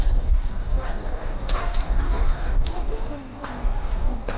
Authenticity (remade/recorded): remade